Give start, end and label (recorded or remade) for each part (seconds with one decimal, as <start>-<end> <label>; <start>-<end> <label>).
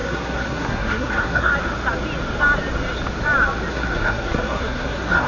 0.0-1.5 remade; 1.5-3.7 recorded; 3.7-5.3 remade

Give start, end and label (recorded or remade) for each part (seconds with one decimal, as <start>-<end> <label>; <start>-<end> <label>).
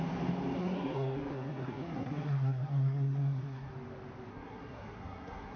0.0-0.6 recorded; 0.6-3.7 remade; 3.7-4.3 recorded; 4.3-5.6 remade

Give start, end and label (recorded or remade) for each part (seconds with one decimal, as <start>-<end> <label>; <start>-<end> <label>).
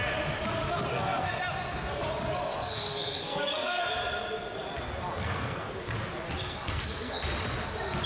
0.0-0.9 recorded; 0.9-1.4 remade; 1.4-2.5 recorded; 2.5-3.8 remade; 3.8-5.2 recorded; 5.2-5.8 remade; 5.8-6.4 recorded; 6.4-7.2 remade; 7.2-8.1 recorded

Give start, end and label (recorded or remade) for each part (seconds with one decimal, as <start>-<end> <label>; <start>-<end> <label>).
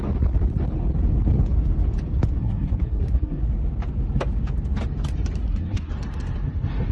0.0-2.4 recorded; 2.4-3.4 remade; 3.4-5.4 recorded; 5.4-5.9 remade; 5.9-6.9 recorded